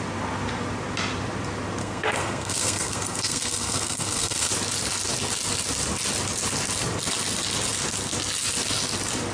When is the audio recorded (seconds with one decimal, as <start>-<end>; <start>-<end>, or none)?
0.0-1.8; 4.5-9.3